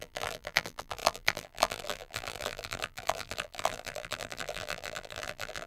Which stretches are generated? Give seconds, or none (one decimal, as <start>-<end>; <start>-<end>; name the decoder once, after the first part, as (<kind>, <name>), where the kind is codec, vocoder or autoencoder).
0.0-5.7 (vocoder, BigVGAN v2)